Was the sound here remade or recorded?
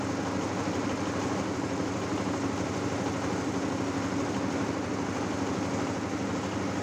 recorded